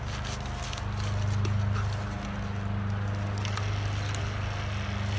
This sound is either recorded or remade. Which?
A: recorded